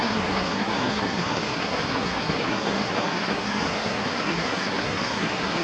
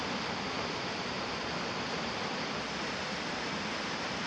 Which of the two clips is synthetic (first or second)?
first